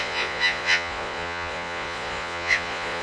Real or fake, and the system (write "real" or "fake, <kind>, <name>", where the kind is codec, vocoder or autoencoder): fake, vocoder, Vocos